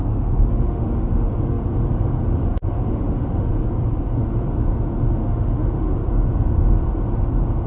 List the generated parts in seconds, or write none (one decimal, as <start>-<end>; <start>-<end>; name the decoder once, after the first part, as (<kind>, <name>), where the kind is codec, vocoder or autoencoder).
0.0-1.4 (autoencoder, DAC-VAE); 2.5-3.5; 5.2-6.1